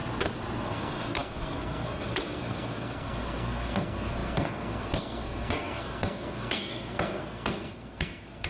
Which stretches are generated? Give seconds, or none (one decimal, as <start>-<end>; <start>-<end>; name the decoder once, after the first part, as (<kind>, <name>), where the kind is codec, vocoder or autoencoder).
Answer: 0.6-8.5 (codec, SNAC)